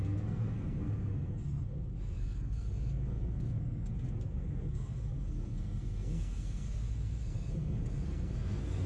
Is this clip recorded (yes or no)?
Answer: no